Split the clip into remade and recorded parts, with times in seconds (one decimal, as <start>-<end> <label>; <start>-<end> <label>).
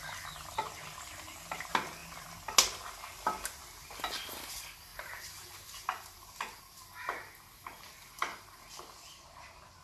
0.0-4.9 recorded; 4.9-6.6 remade; 6.6-8.3 recorded; 8.3-9.2 remade; 9.2-9.8 recorded